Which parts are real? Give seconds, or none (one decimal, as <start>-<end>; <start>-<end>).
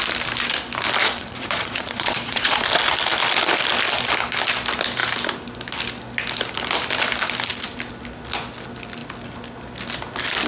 0.0-1.0; 2.6-10.5